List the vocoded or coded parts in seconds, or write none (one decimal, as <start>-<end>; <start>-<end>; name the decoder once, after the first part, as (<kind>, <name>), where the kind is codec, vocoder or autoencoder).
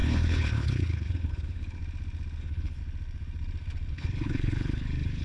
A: 0.0-1.8 (codec, HILCodec); 2.4-2.8; 3.9-5.2